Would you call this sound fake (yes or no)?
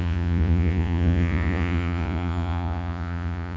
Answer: yes